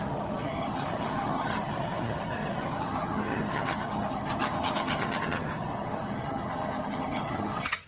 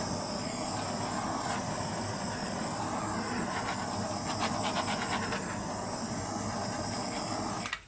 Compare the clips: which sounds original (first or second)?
second